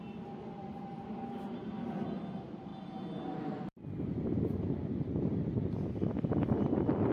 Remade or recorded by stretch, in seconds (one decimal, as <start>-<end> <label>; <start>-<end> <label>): 0.0-7.1 recorded